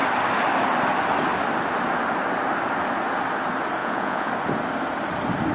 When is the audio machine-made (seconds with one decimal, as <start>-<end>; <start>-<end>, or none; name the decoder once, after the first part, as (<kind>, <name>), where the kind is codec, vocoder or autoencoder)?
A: 3.8-4.3 (vocoder, Vocos)